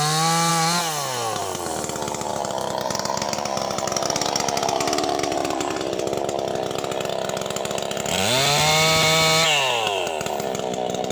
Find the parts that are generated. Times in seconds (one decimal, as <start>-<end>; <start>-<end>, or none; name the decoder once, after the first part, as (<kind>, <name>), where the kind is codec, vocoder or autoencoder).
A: 2.3-6.0 (vocoder, BigVGAN v2)